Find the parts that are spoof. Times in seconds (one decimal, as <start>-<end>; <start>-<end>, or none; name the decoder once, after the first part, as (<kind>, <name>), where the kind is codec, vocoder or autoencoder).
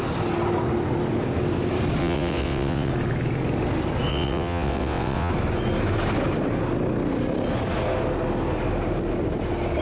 2.0-2.9 (vocoder, WaveNeXt); 4.1-5.3